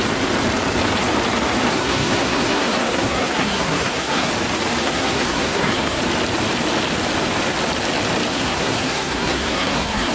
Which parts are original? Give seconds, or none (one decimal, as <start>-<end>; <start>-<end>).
0.0-1.7; 4.3-4.8; 6.0-8.3